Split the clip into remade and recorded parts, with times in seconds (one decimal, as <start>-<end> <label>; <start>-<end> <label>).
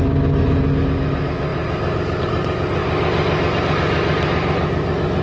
0.0-5.2 recorded